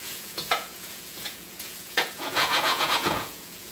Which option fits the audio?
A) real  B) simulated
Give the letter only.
B